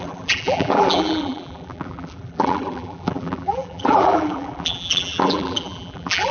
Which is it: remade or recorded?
remade